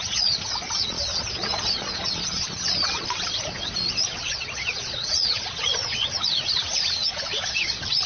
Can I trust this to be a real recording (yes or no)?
no